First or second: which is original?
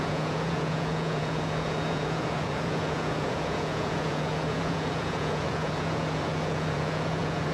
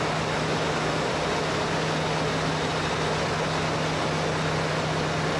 second